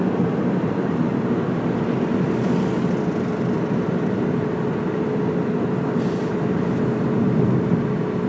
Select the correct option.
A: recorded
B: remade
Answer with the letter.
A